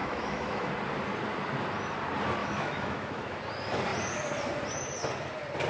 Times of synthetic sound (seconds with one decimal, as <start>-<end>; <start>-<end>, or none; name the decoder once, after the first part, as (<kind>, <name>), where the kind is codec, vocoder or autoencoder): 0.0-0.7 (autoencoder, DAC-VAE); 2.4-3.4